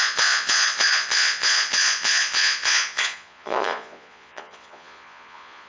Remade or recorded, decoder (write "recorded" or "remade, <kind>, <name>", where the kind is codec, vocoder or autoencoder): remade, vocoder, Vocos